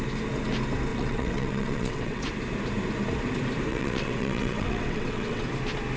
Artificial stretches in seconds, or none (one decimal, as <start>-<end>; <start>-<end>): 0.9-2.2; 3.7-5.4